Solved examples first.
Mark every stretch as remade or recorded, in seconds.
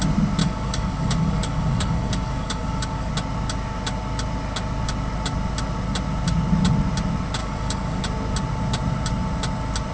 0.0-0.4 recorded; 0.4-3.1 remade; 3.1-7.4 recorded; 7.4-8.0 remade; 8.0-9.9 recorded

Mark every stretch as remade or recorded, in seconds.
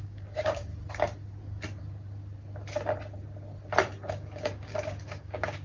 0.0-0.7 remade; 0.7-4.1 recorded; 4.1-5.6 remade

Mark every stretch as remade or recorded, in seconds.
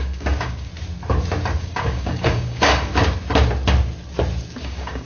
0.0-0.7 remade; 0.7-1.6 recorded; 1.6-2.9 remade; 2.9-4.6 recorded; 4.6-5.1 remade